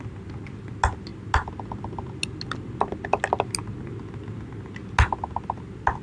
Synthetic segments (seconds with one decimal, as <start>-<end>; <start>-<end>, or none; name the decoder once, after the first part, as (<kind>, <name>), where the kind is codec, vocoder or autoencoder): none